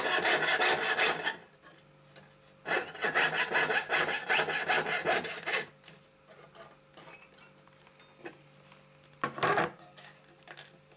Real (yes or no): yes